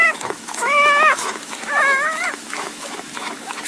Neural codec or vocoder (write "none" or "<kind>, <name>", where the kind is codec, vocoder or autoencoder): autoencoder, DAC-VAE